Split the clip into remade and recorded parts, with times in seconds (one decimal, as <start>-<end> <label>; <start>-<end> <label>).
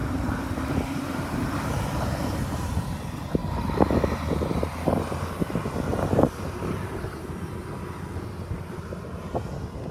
0.0-1.7 remade; 1.7-3.4 recorded; 3.4-4.6 remade; 4.6-5.9 recorded; 5.9-7.2 remade; 7.2-9.9 recorded